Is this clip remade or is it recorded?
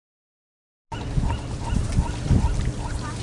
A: recorded